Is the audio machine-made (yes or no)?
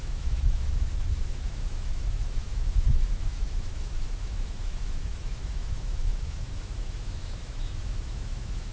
yes